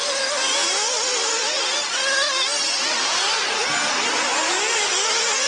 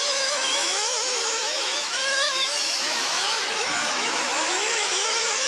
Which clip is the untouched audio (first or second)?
first